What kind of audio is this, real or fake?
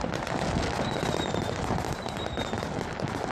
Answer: real